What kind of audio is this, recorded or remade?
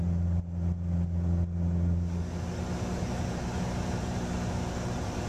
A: recorded